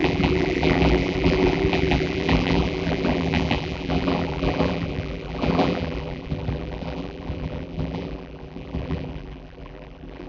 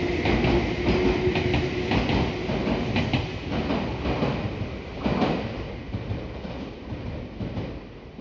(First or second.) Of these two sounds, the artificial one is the first